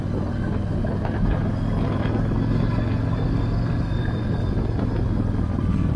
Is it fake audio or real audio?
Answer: real